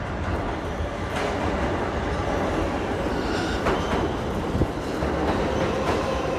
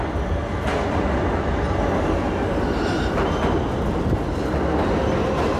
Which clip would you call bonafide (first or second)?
second